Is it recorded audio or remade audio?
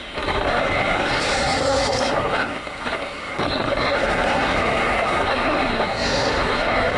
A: remade